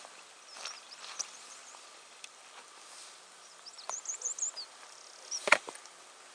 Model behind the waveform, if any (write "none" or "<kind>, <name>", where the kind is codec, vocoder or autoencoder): vocoder, BigVGAN v2